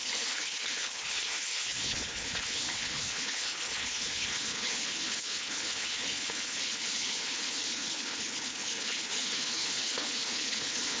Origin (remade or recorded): remade